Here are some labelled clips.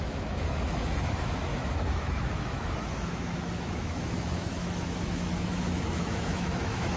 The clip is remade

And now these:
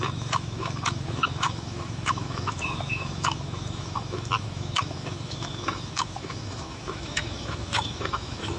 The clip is remade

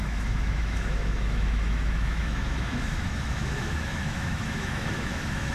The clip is remade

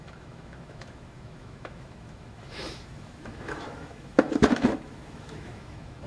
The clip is remade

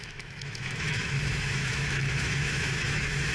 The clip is remade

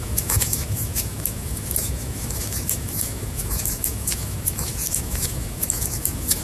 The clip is remade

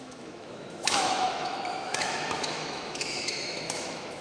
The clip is remade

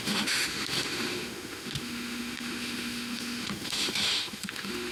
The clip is remade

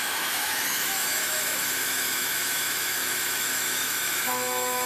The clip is remade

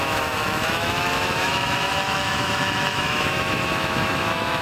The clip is remade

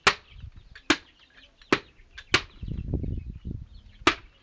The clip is recorded